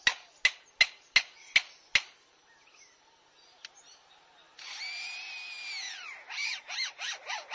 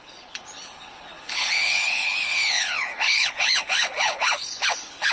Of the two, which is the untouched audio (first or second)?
first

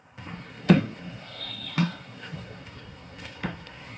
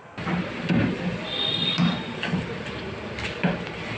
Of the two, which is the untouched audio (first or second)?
second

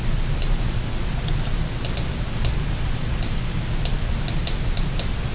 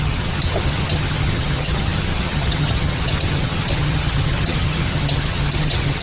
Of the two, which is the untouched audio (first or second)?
first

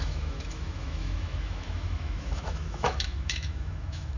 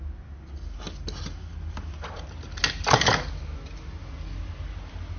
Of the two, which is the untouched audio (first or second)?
second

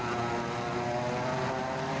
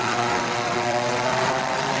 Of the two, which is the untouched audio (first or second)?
first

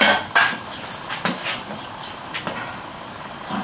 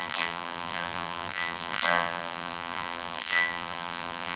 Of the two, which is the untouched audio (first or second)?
first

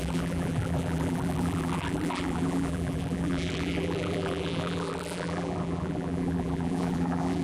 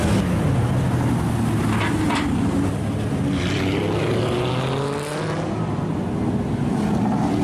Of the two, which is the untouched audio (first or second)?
second